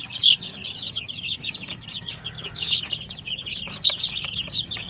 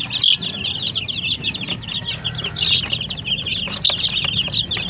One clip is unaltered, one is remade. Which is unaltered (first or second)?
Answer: second